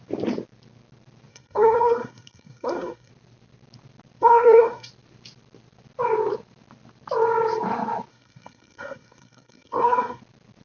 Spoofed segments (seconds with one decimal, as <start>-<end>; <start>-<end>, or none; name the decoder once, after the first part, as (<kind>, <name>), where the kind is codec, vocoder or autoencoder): 1.3-3.1 (codec, SNAC); 4.2-4.9; 8.1-10.2